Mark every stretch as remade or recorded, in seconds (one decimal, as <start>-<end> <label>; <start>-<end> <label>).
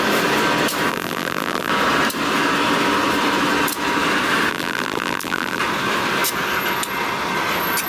0.0-0.9 recorded; 0.9-1.7 remade; 1.7-4.5 recorded; 4.5-5.6 remade; 5.6-7.9 recorded